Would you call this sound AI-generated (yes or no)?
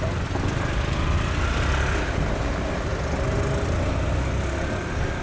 no